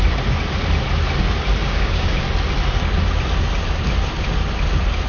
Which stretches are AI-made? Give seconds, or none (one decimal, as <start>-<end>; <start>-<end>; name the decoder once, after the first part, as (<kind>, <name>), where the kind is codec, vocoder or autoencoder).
1.6-2.2 (codec, DAC)